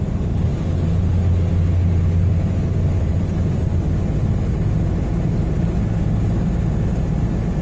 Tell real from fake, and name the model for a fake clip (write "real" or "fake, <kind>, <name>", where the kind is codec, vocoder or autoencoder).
real